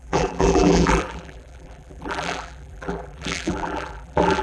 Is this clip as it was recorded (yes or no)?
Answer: no